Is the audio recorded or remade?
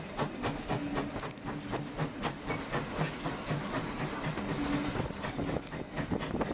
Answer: recorded